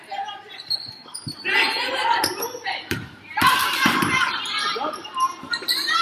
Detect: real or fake fake